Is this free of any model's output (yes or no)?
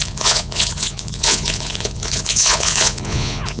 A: no